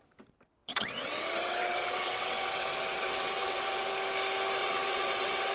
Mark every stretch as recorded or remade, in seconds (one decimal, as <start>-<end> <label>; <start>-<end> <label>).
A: 0.0-0.6 recorded; 0.6-3.9 remade; 3.9-4.6 recorded; 4.6-5.5 remade